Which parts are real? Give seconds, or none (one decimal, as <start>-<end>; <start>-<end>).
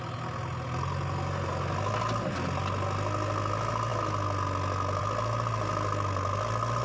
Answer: 0.0-6.8